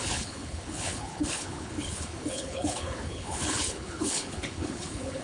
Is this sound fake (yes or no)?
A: yes